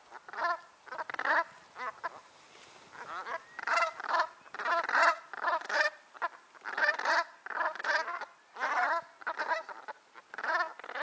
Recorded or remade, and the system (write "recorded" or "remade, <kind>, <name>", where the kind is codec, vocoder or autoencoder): recorded